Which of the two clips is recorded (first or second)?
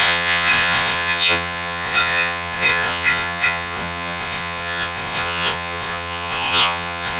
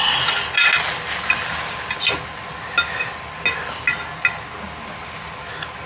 second